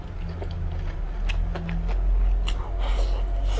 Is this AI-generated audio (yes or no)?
no